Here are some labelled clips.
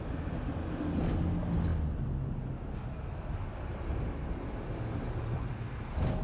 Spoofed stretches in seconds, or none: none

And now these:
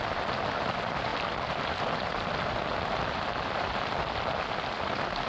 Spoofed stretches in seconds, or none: none

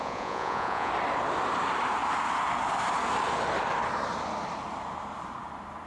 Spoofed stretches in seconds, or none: 0.0-0.9 (vocoder, Vocos)

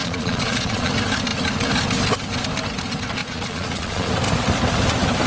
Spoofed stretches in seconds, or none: 0.0-0.9 (vocoder, Vocos); 3.2-4.1

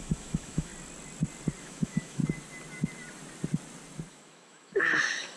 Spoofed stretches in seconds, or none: 0.0-0.7 (autoencoder, DAC-VAE); 1.6-2.2; 4.1-5.4